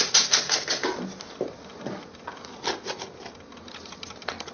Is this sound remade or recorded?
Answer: recorded